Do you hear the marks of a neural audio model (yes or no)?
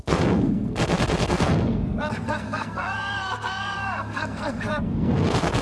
yes